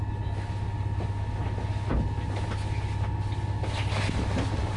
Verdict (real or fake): real